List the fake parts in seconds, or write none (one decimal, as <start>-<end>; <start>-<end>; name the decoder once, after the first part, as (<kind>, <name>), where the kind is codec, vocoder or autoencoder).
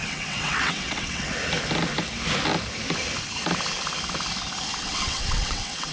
0.0-1.3 (vocoder, WaveNeXt); 4.8-5.9